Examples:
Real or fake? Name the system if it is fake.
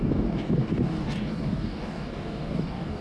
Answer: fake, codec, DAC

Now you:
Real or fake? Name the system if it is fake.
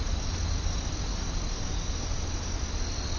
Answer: real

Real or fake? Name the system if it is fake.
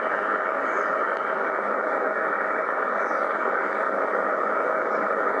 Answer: fake, codec, DAC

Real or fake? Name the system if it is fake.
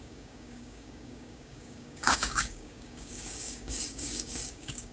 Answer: fake, codec, DAC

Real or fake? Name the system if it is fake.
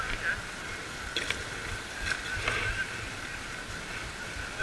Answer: real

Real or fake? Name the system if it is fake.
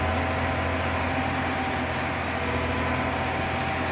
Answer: real